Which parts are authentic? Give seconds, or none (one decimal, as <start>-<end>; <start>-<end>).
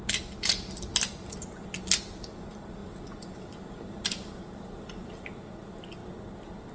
0.0-6.7